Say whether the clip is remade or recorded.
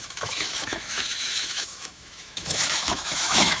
remade